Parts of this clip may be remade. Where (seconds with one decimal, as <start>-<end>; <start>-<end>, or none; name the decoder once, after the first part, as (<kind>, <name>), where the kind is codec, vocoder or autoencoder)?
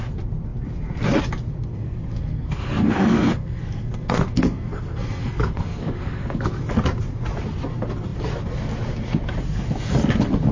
1.6-6.7 (codec, SNAC)